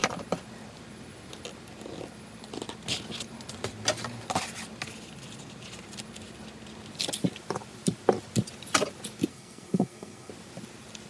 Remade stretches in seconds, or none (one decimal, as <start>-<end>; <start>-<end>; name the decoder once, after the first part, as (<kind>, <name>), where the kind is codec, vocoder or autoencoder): 9.3-10.3 (codec, SNAC)